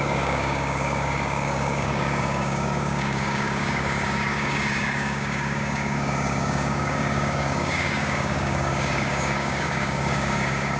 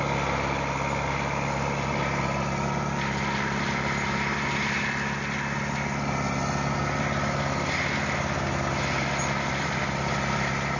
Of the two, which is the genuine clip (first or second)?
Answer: second